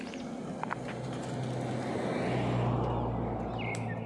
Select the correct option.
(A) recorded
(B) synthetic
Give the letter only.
A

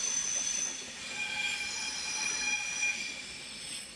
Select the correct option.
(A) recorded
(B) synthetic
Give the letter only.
A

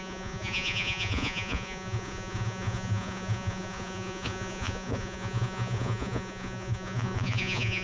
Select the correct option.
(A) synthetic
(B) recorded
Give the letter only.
A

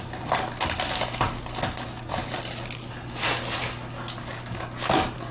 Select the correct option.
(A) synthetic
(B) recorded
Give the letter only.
B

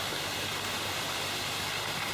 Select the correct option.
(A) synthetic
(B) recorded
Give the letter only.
B